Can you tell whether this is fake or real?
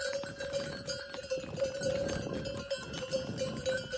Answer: real